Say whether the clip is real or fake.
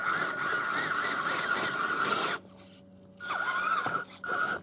real